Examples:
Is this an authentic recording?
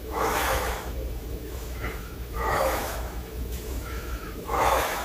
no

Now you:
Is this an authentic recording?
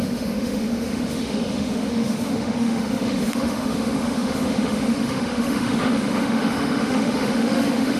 no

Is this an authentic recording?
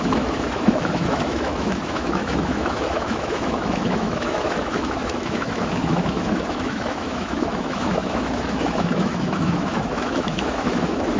no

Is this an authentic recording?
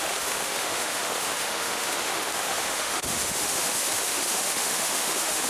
no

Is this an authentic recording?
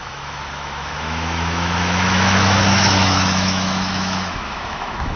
no